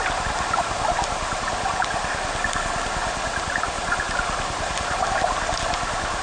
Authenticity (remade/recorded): recorded